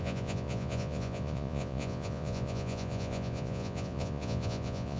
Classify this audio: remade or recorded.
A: remade